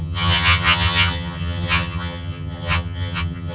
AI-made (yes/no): yes